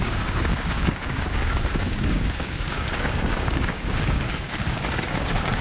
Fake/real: fake